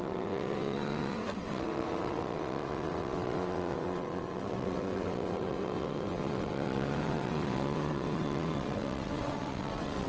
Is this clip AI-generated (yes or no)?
yes